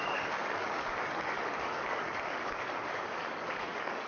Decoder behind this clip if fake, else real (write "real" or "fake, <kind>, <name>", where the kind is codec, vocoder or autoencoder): fake, codec, DAC